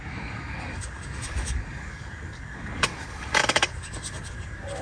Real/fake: fake